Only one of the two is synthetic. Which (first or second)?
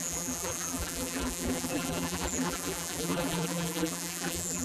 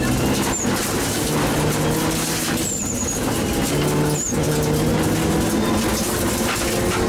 first